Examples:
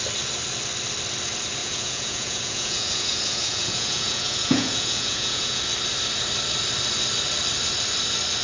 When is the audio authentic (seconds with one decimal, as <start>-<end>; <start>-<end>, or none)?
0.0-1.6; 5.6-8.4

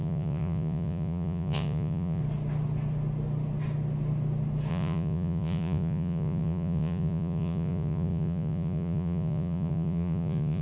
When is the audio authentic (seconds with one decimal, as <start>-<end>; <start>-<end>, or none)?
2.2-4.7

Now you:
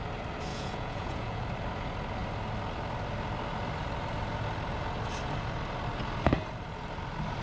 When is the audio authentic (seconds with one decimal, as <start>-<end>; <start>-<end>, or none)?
0.0-0.5; 1.4-7.4